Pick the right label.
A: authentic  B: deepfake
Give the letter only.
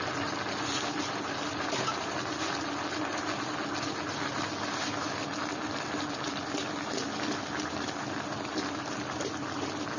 A